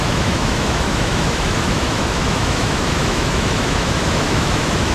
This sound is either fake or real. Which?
fake